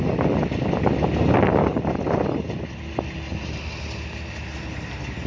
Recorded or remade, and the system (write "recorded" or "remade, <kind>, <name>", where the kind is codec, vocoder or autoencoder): recorded